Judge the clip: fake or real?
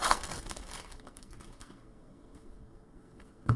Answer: fake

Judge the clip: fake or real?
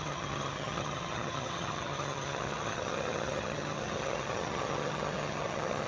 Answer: fake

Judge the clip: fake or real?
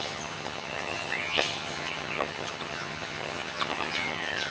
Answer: fake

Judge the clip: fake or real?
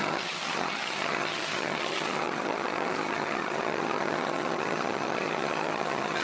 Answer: fake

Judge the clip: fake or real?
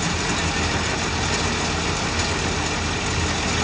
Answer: real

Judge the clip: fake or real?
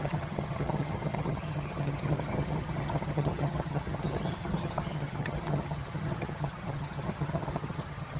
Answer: fake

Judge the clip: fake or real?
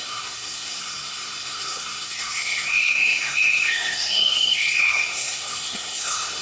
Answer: fake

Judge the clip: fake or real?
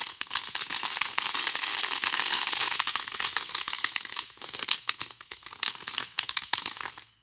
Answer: fake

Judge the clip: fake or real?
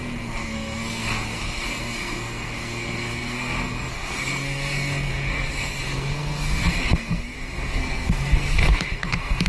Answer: fake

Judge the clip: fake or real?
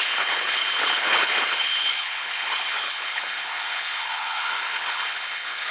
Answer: fake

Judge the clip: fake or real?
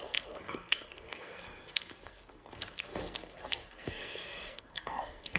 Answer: fake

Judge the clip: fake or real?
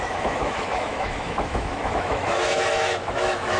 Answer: fake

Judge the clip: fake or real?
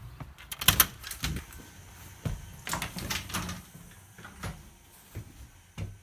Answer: real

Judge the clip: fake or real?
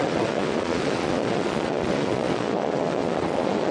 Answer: fake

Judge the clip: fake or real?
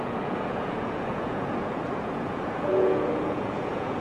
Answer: fake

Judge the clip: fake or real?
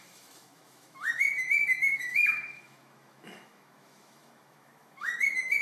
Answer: fake